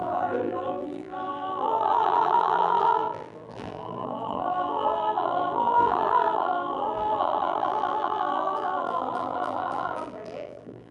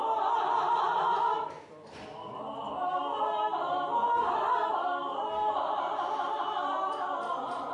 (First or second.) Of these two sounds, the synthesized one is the first